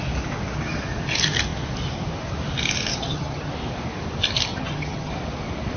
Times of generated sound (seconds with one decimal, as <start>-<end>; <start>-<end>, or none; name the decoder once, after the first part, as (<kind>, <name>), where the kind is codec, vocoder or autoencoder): 2.9-3.5 (vocoder, HiFi-GAN); 4.5-5.1